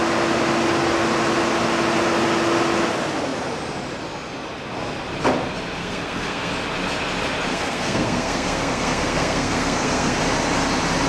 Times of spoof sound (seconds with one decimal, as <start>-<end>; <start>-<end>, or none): 5.8-6.5; 7.5-10.2